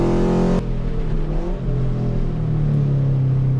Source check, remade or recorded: recorded